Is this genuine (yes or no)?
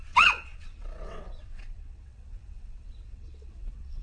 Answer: no